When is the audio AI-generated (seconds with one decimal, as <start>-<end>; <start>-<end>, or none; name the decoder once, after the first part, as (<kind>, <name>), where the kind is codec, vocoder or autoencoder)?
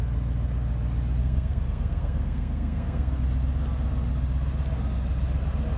1.2-3.2 (codec, SNAC)